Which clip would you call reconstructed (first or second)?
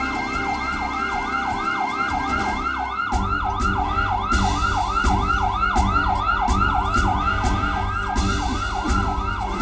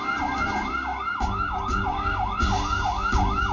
second